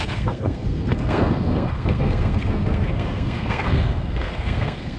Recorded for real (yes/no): no